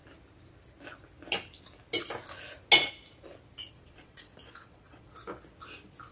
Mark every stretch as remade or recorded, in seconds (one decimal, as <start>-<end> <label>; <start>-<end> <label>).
0.0-3.7 recorded; 3.7-5.2 remade; 5.2-6.1 recorded